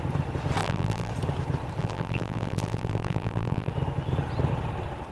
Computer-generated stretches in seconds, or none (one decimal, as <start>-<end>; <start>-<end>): 0.6-1.1; 1.8-3.7